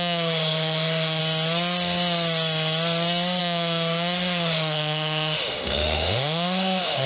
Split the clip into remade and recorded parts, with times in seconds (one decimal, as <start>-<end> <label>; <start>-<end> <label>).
0.0-1.2 remade; 1.2-3.4 recorded; 3.4-7.1 remade